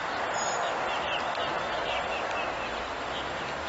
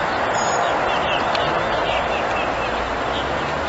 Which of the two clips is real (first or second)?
second